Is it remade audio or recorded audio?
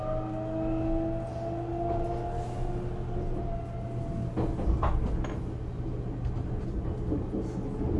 recorded